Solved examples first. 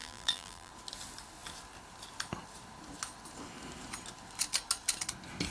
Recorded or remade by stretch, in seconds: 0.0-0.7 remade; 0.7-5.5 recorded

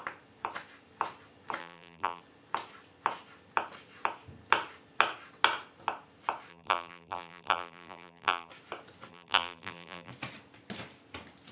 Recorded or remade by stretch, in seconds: 0.0-1.6 recorded; 1.6-2.2 remade; 2.2-6.5 recorded; 6.5-8.5 remade; 8.5-9.1 recorded; 9.1-10.1 remade; 10.1-11.5 recorded

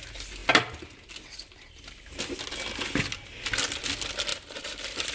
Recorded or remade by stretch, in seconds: 0.0-4.3 recorded; 4.3-5.1 remade

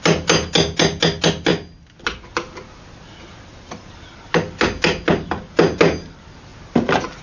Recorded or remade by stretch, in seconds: 0.0-7.2 recorded